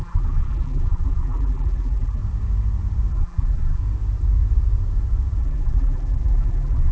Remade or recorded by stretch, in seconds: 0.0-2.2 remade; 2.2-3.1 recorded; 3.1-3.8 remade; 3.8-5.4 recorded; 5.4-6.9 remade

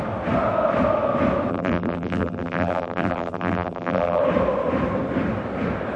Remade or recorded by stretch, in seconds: 0.0-1.5 recorded; 1.5-4.2 remade; 4.2-6.0 recorded

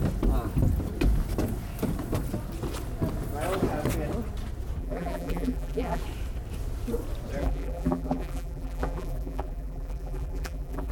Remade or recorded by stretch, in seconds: 0.0-4.8 recorded; 4.8-6.0 remade; 6.0-7.4 recorded; 7.4-10.9 remade

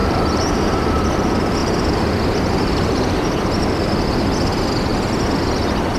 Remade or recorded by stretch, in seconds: 0.0-0.9 remade; 0.9-1.6 recorded; 1.6-3.2 remade; 3.2-6.0 recorded

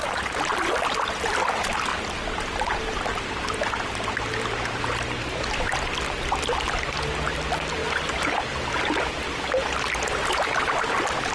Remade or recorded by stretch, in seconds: 0.0-11.3 recorded